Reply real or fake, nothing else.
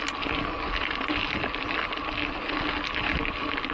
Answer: real